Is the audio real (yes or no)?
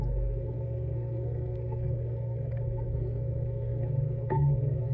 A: no